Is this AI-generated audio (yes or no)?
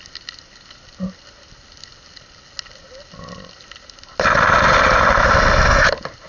no